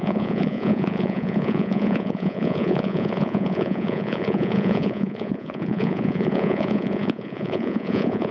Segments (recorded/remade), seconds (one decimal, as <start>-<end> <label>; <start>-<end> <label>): 0.0-8.3 remade

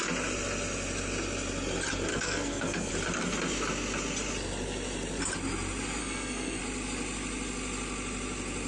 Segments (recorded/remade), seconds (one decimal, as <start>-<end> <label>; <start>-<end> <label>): 0.0-2.1 recorded; 2.1-2.9 remade; 2.9-6.0 recorded; 6.0-6.6 remade; 6.6-8.7 recorded

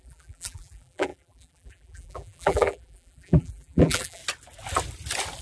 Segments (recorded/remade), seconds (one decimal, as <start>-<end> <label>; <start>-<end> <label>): 0.0-4.2 remade; 4.2-5.4 recorded

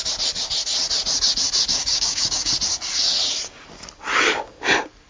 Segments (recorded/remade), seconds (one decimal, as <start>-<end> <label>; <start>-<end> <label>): 0.0-1.7 recorded; 1.7-2.5 remade; 2.5-5.1 recorded

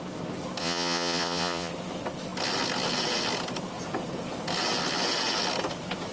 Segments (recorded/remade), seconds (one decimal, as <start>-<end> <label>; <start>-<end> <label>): 0.0-0.6 recorded; 0.6-1.7 remade; 1.7-6.1 recorded

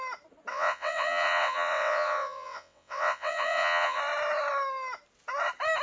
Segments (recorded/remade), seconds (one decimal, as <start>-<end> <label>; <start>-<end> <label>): 0.0-0.5 recorded; 0.5-4.0 remade; 4.0-5.8 recorded